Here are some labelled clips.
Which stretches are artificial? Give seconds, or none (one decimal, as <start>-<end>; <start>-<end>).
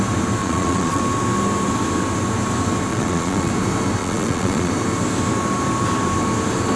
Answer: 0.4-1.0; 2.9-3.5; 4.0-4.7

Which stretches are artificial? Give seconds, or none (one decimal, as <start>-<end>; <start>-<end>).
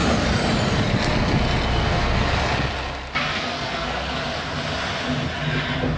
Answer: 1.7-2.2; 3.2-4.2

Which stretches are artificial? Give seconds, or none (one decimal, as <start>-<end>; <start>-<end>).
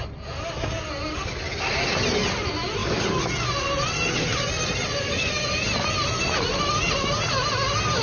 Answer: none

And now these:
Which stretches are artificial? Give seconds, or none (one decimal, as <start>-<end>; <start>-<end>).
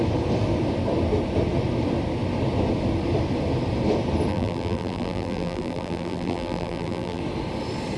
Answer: 4.3-7.2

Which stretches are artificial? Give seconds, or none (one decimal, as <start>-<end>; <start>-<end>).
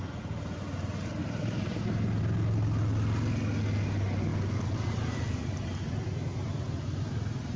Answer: 1.2-2.2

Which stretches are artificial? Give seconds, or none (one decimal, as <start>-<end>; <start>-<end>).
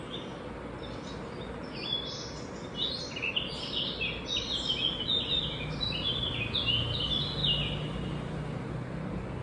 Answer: none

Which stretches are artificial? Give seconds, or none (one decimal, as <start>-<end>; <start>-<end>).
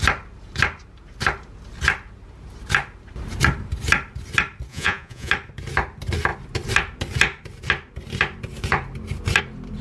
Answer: 4.7-5.3